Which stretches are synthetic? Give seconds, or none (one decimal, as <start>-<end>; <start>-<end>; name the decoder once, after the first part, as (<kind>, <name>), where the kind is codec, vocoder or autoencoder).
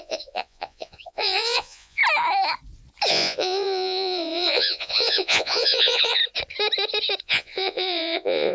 0.0-2.0 (vocoder, Vocos); 3.1-6.2; 7.2-8.5